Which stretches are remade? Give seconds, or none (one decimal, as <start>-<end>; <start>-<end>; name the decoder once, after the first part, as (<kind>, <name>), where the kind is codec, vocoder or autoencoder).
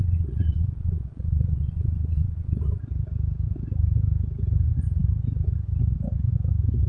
0.0-2.8 (vocoder, Vocos)